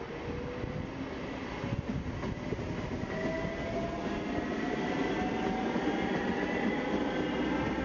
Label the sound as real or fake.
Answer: real